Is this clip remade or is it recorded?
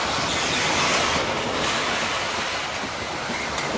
remade